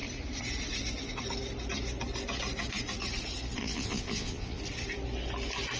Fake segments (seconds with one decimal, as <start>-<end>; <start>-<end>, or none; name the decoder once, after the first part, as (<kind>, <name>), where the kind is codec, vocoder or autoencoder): 3.6-4.6 (vocoder, Vocos)